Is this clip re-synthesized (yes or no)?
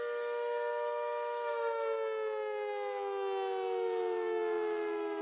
yes